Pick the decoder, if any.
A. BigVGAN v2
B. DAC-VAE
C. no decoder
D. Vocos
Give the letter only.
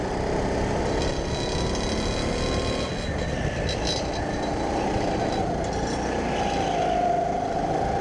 C